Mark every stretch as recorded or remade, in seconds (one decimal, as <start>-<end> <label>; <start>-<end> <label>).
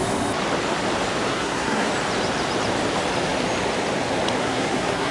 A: 0.0-1.3 recorded; 1.3-1.9 remade; 1.9-4.4 recorded; 4.4-5.1 remade